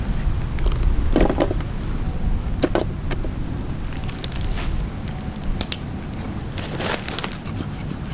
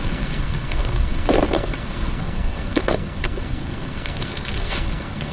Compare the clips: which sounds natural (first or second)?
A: first